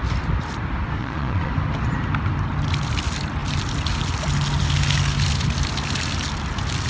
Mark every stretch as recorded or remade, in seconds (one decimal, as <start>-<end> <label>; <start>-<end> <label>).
0.0-1.0 recorded; 1.0-1.5 remade; 1.5-6.9 recorded